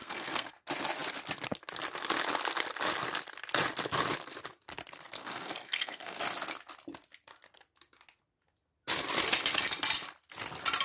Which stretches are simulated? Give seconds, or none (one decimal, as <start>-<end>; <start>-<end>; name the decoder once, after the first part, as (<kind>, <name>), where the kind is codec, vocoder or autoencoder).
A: 0.0-0.5 (codec, SNAC); 5.2-6.2